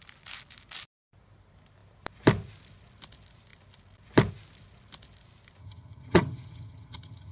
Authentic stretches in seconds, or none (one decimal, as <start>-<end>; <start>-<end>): 0.0-5.6